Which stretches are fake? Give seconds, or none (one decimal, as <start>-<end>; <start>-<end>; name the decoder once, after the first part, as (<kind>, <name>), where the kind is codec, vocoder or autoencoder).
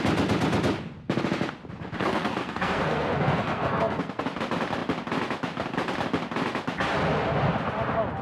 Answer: 2.0-4.2 (codec, SNAC)